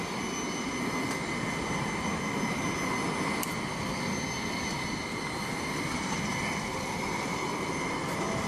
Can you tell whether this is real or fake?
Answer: real